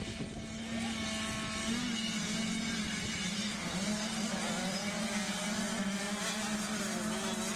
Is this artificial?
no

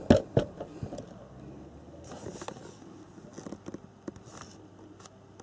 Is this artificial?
no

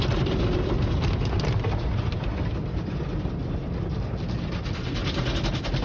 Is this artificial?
no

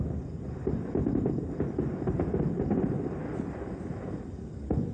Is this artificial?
no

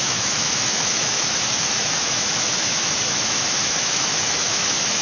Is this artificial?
yes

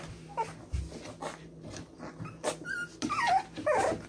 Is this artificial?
no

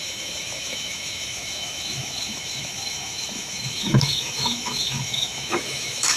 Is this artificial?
yes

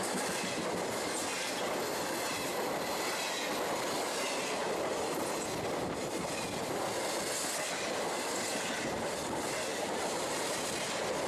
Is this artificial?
no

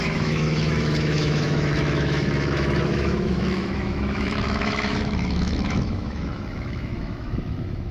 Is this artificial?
yes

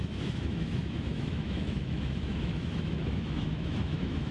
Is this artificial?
yes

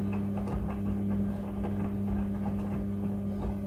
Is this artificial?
no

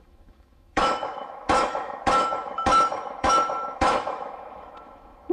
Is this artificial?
yes